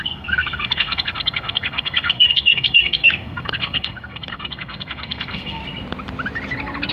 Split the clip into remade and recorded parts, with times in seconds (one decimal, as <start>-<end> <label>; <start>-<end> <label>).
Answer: 0.0-5.6 remade; 5.6-6.9 recorded